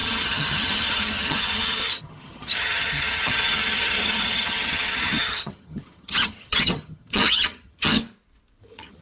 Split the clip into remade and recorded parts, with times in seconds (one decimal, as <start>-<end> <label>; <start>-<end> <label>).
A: 0.0-8.0 remade; 8.0-8.6 recorded; 8.6-9.0 remade